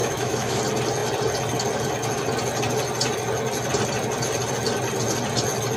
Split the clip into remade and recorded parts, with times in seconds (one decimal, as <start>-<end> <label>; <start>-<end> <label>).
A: 0.0-0.6 remade; 0.6-5.8 recorded